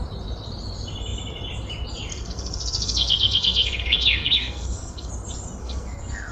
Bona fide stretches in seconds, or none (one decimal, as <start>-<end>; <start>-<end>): 0.0-2.1; 5.1-5.6

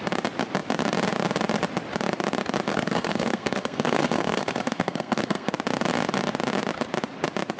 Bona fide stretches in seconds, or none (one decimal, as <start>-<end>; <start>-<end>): 0.0-2.7; 5.5-7.6

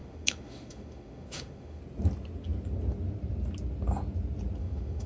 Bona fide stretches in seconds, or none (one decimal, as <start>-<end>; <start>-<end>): 1.8-4.6

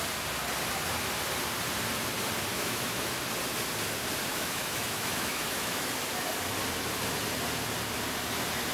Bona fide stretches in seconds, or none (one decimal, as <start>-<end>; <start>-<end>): 0.0-2.5; 3.2-4.3; 5.9-8.7

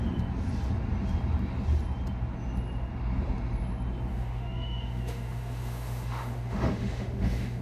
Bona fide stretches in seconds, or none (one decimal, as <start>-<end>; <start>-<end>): 0.0-4.1